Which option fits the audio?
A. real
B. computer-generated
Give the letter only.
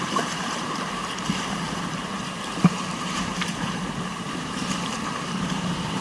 B